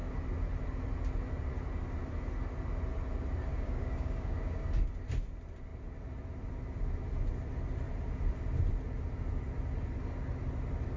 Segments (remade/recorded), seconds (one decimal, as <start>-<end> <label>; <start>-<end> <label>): 0.0-3.5 recorded; 3.5-4.7 remade; 4.7-11.0 recorded